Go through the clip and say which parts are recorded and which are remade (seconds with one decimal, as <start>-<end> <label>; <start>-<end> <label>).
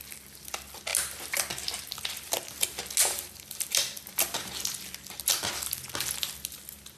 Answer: 0.0-7.0 recorded